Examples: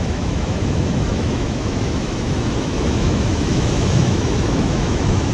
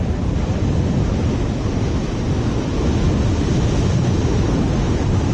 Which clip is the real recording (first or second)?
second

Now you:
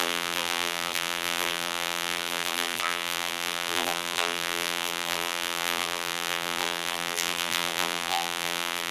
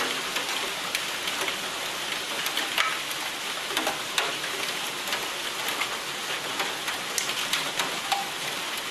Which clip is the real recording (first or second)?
second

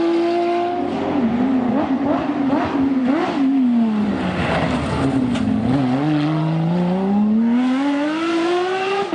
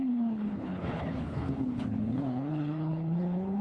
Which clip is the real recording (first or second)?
first